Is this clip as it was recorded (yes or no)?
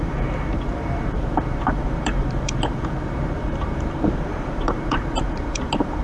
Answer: no